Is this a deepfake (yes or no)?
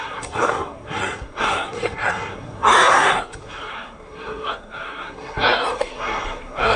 yes